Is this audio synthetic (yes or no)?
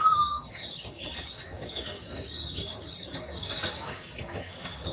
yes